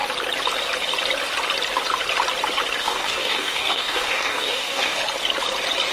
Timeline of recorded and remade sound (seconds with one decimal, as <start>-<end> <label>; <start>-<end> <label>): 0.0-2.8 recorded; 2.8-5.0 remade; 5.0-5.9 recorded